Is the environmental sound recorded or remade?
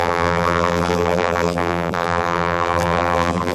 remade